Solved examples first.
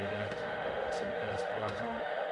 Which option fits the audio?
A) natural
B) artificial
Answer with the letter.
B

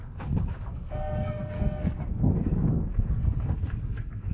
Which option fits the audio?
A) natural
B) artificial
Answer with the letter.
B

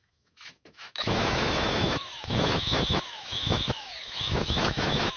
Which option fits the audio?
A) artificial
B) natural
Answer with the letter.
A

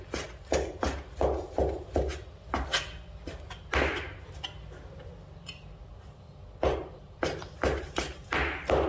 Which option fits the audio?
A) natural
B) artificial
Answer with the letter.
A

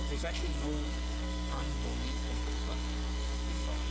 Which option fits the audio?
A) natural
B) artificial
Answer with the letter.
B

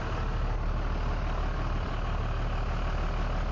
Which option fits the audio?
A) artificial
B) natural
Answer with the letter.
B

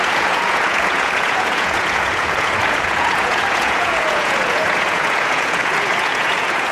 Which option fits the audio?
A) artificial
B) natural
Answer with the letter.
A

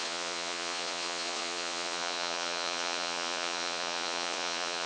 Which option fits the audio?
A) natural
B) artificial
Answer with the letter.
B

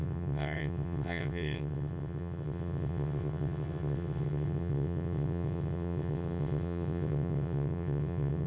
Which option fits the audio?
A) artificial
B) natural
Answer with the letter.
A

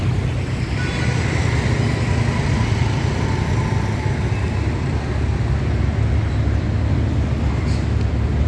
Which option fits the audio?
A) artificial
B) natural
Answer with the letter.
B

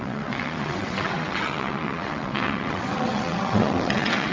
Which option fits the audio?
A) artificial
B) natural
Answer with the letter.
A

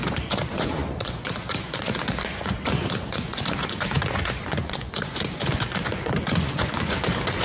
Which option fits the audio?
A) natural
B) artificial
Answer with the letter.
B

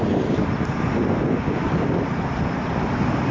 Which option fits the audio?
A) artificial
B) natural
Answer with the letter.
B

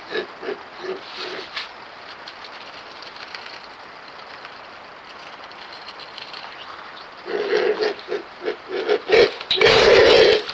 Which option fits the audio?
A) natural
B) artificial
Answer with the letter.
A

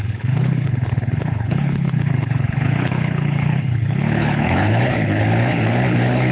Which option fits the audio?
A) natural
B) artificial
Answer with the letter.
B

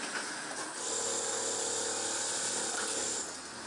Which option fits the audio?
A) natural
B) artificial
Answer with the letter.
A